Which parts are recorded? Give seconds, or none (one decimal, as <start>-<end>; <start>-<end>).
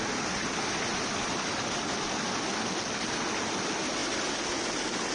0.0-5.1